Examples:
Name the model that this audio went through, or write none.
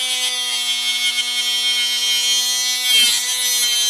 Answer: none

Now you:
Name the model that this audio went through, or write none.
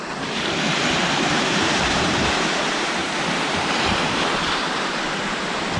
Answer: vocoder, BigVGAN v2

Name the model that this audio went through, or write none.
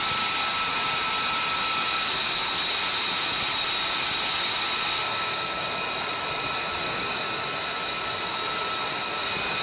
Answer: none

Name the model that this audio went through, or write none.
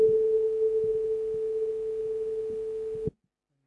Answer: none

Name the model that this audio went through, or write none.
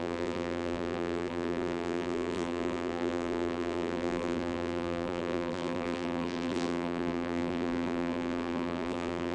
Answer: vocoder, BigVGAN v2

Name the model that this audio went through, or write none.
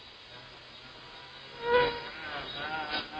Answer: none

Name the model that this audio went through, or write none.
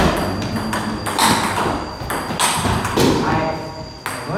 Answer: none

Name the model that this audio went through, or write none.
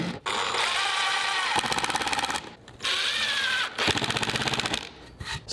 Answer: none